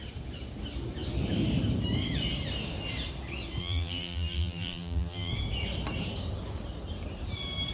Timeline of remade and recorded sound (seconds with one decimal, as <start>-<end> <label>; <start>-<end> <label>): 0.0-3.6 recorded; 3.6-5.3 remade; 5.3-7.7 recorded